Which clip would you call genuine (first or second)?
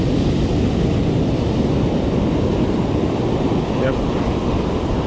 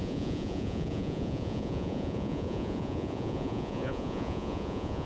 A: first